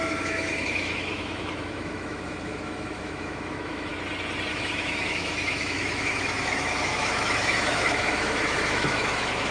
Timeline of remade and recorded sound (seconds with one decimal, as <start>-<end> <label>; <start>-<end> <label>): 0.0-3.9 remade; 3.9-4.5 recorded; 4.5-9.5 remade